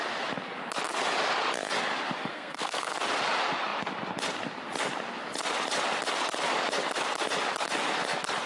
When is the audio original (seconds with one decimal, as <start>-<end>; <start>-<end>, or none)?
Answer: 0.0-2.3; 2.9-8.5